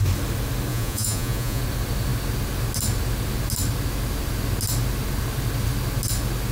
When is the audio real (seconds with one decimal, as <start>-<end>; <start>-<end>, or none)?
0.0-0.7; 1.6-6.5